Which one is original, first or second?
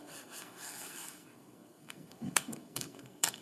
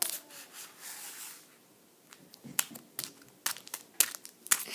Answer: second